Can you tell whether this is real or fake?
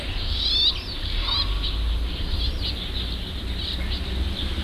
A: real